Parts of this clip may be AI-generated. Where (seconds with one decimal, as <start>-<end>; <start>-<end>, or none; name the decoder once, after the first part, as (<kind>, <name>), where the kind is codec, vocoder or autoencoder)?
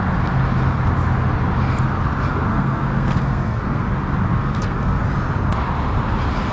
2.5-3.8 (codec, SNAC); 4.3-5.0